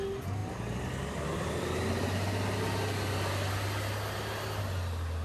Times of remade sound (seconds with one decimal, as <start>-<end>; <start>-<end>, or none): none